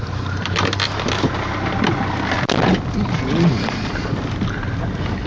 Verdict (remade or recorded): recorded